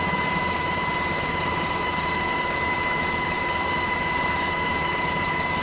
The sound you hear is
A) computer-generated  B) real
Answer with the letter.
A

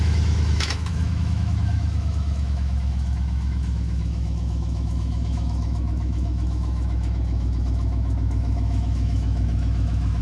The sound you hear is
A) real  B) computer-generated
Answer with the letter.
B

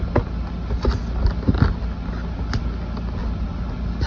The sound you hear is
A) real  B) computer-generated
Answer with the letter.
A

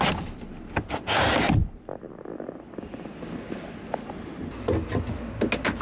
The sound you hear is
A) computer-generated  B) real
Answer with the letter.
B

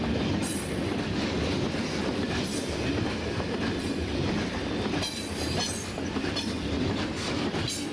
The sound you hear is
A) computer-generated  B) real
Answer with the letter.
B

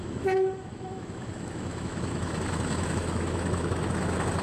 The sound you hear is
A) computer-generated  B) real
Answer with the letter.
A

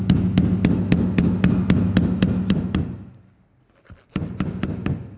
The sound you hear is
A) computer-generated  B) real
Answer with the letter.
B